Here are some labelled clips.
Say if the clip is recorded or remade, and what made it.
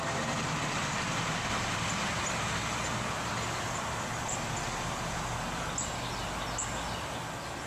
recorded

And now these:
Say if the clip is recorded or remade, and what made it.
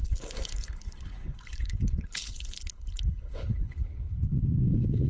remade, codec, HILCodec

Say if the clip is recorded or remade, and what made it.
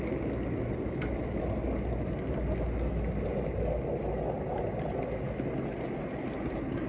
recorded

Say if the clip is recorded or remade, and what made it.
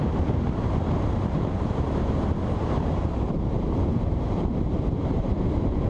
remade, vocoder, BigVGAN v2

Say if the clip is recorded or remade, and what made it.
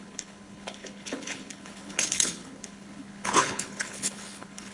remade, codec, HILCodec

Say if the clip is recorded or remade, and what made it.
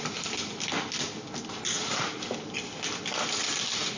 recorded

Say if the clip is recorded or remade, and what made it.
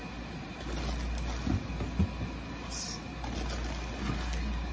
recorded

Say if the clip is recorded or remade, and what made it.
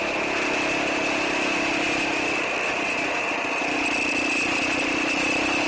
recorded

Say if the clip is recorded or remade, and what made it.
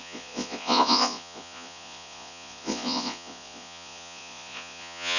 remade, vocoder, Vocos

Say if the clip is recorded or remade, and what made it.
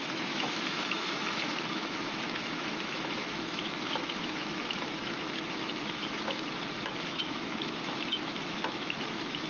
remade, autoencoder, DAC-VAE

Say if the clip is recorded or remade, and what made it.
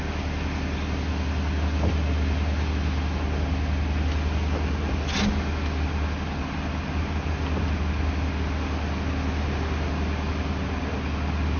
recorded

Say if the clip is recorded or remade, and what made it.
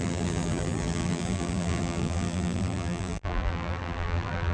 remade, vocoder, BigVGAN v2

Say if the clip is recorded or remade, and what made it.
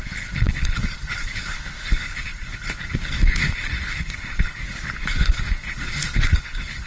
remade, codec, HILCodec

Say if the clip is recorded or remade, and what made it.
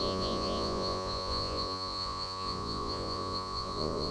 remade, vocoder, Vocos